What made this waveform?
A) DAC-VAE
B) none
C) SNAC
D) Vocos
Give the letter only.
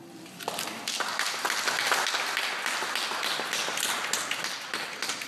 B